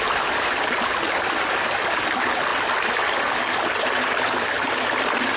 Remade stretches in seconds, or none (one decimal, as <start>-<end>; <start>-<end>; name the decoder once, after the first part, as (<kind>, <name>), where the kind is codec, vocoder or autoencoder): none